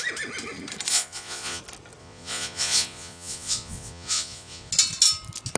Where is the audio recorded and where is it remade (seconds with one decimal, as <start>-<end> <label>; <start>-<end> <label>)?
0.0-0.9 recorded; 0.9-1.6 remade; 1.6-2.0 recorded; 2.0-4.7 remade; 4.7-5.6 recorded